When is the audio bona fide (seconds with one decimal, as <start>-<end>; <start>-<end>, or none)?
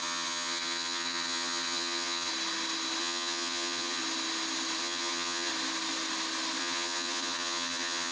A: 2.3-3.0; 4.0-4.8; 5.5-6.6